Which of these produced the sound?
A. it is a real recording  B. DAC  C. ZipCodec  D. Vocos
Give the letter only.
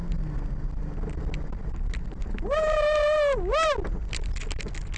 A